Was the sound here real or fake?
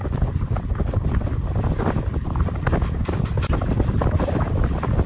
real